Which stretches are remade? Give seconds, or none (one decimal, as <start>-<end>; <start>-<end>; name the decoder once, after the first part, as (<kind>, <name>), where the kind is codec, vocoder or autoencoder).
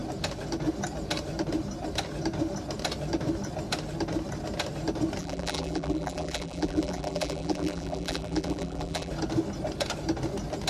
5.2-9.1 (vocoder, BigVGAN v2)